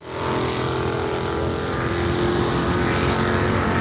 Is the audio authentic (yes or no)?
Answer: no